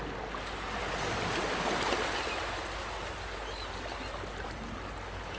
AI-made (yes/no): no